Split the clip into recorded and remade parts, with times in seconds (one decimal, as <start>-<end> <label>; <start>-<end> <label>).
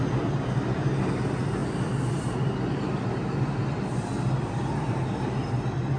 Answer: 0.0-6.0 recorded